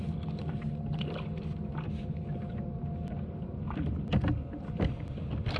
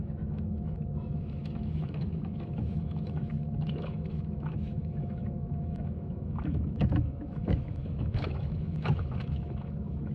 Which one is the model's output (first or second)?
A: second